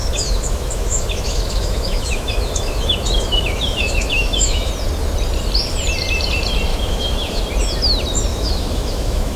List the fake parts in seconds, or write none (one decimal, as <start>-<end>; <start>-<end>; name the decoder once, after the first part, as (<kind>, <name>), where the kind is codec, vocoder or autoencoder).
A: 0.0-4.7 (autoencoder, DAC-VAE); 6.7-7.4; 8.3-9.4

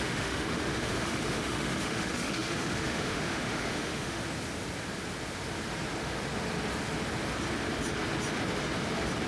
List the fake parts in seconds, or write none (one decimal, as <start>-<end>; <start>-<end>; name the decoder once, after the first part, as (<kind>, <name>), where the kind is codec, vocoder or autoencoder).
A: 0.0-4.2 (autoencoder, DAC-VAE)

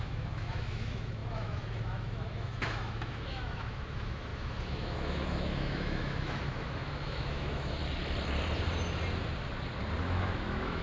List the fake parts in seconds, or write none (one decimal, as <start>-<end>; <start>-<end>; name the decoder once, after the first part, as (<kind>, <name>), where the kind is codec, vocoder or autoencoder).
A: 0.0-7.8 (autoencoder, DAC-VAE); 10.0-10.8

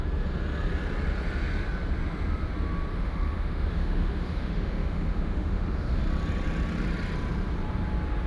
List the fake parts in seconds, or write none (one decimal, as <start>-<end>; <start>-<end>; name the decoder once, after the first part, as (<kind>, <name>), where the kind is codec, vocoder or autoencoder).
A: 2.9-6.0 (autoencoder, DAC-VAE)

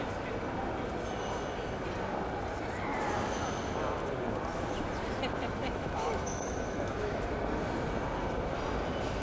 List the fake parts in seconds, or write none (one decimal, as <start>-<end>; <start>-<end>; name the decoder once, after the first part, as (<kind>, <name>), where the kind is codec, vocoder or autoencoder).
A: 5.6-7.3 (autoencoder, DAC-VAE)

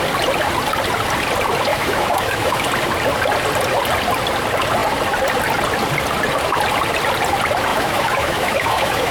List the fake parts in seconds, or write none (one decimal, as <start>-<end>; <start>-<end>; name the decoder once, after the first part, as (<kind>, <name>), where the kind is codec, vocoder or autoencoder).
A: 1.7-2.6 (autoencoder, DAC-VAE); 7.7-9.1

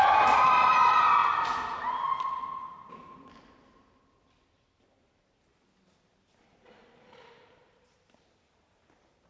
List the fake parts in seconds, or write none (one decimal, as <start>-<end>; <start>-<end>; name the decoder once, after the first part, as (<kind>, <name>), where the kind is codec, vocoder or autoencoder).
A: none

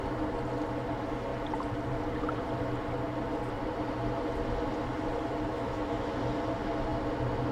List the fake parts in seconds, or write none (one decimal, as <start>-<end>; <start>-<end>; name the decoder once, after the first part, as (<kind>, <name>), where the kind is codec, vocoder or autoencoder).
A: 5.5-6.2 (autoencoder, DAC-VAE)